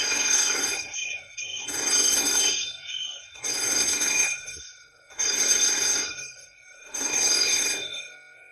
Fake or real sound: fake